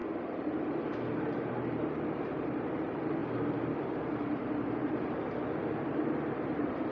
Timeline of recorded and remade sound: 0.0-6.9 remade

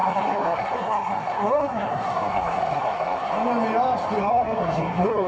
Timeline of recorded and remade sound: 0.0-3.3 remade; 3.3-4.2 recorded; 4.2-5.3 remade

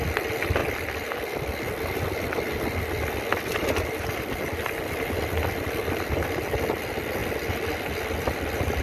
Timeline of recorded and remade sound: 0.0-8.8 recorded

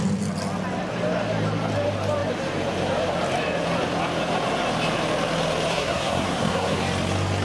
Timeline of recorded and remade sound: 0.0-5.7 recorded; 5.7-6.8 remade; 6.8-7.4 recorded

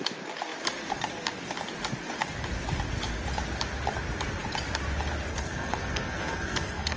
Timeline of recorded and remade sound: 0.0-5.3 recorded; 5.3-7.0 remade

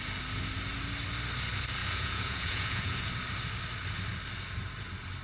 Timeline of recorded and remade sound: 0.0-1.8 recorded; 1.8-3.1 remade; 3.1-5.2 recorded